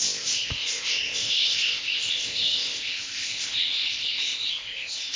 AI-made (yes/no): yes